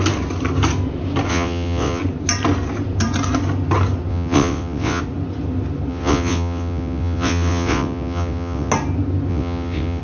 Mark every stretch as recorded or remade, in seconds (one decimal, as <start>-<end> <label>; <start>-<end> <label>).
0.0-1.3 recorded; 1.3-2.0 remade; 2.0-4.1 recorded; 4.1-5.0 remade; 5.0-5.9 recorded; 5.9-8.7 remade; 8.7-9.3 recorded; 9.3-10.0 remade